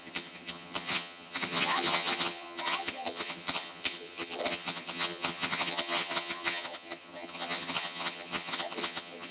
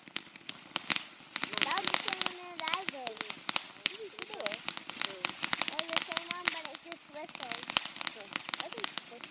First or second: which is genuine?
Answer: second